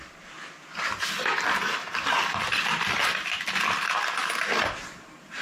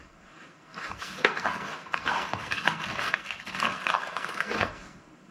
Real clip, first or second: first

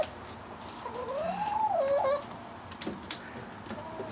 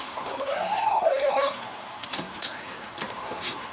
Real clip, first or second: first